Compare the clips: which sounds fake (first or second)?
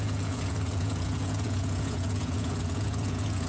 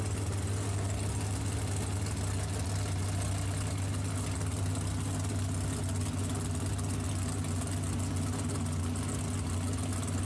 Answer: first